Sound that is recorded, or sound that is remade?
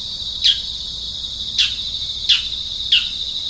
recorded